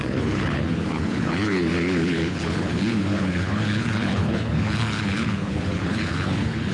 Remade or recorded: remade